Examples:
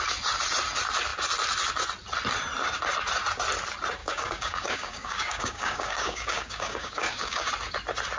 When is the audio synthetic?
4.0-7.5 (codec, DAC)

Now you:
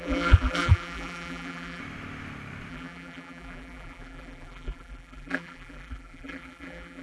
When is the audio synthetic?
0.0-1.8 (vocoder, BigVGAN v2); 2.7-7.0

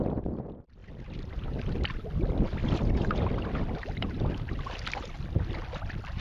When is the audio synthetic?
0.8-1.6 (vocoder, BigVGAN v2)